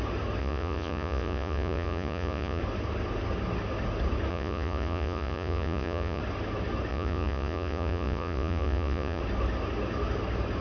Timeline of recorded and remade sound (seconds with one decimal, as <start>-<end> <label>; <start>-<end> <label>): 0.0-0.4 recorded; 0.4-2.6 remade; 2.6-4.3 recorded; 4.3-6.2 remade; 6.2-6.9 recorded; 6.9-9.2 remade; 9.2-10.6 recorded